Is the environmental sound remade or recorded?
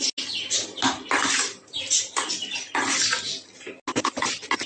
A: recorded